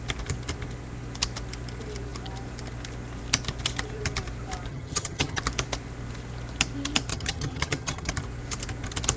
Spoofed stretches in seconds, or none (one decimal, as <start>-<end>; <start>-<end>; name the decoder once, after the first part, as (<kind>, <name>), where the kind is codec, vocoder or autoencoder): 4.7-5.4 (vocoder, HiFi-GAN); 7.1-8.1